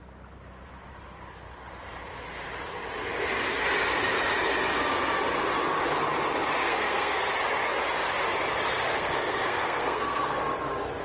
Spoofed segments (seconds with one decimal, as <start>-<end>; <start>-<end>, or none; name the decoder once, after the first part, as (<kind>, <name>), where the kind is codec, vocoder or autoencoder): 6.6-7.3 (codec, SNAC); 8.9-10.4

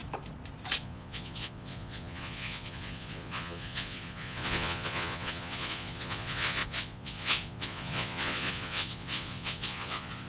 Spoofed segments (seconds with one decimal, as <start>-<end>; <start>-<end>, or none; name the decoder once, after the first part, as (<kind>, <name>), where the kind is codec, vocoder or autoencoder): 0.8-10.3 (vocoder, Vocos)

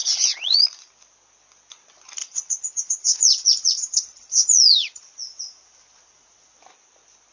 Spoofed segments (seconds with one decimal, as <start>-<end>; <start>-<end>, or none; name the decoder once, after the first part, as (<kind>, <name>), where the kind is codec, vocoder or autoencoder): 0.0-0.9 (vocoder, Vocos); 2.2-6.6

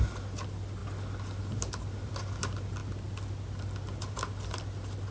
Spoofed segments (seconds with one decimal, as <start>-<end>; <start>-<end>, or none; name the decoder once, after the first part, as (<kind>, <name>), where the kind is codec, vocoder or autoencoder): none

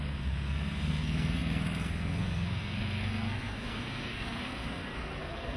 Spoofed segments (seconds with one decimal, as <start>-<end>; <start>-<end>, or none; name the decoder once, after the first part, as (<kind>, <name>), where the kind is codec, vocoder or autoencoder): 0.0-5.6 (codec, SNAC)

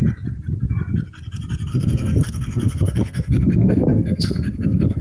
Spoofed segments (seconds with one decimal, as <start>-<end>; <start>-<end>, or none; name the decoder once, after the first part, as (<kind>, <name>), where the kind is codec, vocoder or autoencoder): 1.7-5.0 (codec, SNAC)